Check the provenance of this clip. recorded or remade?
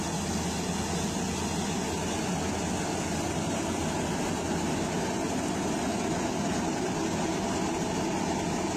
recorded